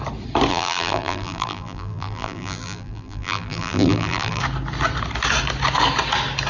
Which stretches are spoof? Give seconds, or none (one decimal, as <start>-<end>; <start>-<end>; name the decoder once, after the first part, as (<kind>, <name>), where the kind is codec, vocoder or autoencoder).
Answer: 0.5-4.4 (vocoder, BigVGAN v2)